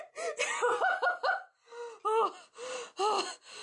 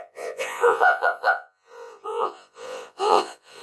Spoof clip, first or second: second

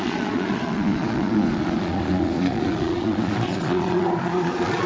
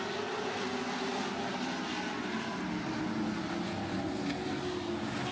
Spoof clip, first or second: first